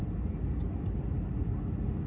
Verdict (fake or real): real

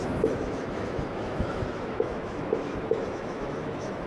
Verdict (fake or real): fake